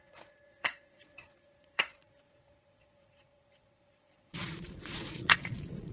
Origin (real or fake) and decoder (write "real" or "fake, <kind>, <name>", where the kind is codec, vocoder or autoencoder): fake, vocoder, Vocos